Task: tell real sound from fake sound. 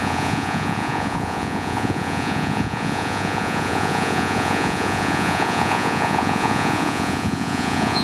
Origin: fake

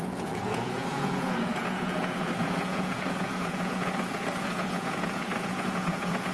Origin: fake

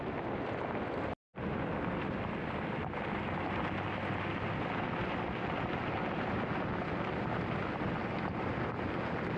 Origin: real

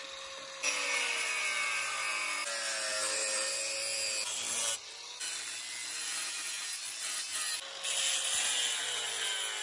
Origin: real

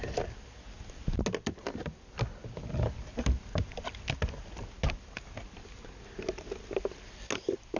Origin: real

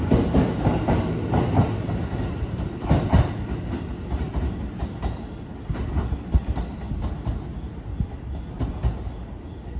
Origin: real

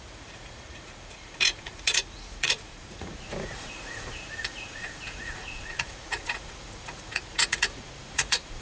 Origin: fake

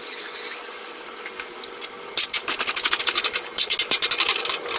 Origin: real